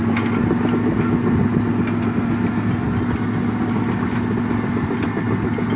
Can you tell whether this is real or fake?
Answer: real